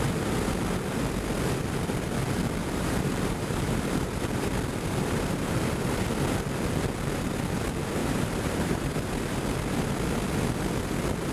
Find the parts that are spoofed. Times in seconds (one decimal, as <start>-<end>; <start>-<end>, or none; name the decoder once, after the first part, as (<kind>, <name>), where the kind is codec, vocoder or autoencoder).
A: 2.6-4.5 (vocoder, BigVGAN v2); 8.0-8.9